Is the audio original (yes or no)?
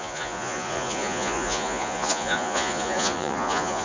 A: no